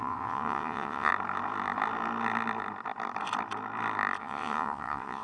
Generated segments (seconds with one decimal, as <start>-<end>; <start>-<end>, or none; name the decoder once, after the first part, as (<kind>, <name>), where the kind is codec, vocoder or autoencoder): 0.0-1.1 (vocoder, WaveNeXt); 4.2-5.2